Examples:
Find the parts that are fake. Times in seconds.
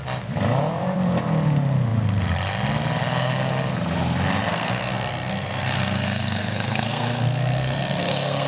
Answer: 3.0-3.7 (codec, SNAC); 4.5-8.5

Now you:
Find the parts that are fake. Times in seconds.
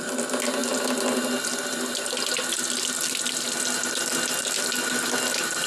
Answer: none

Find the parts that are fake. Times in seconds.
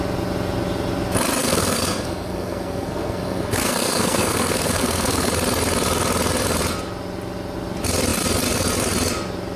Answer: 1.4-5.3 (codec, SNAC)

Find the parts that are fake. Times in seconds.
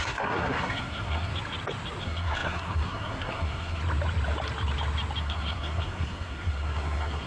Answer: 0.0-1.3 (codec, SNAC); 2.0-3.8; 5.2-7.3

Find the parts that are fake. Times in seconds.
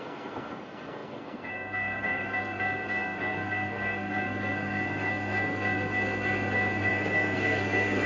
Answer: 0.0-8.1 (codec, SNAC)